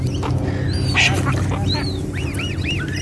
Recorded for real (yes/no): yes